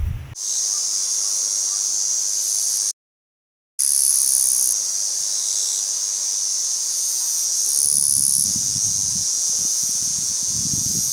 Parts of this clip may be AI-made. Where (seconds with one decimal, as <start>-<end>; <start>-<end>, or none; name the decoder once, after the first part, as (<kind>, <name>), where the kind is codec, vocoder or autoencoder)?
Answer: 6.6-7.6 (vocoder, Vocos); 9.1-11.1